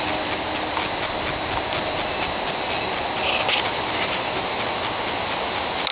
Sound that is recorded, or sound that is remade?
recorded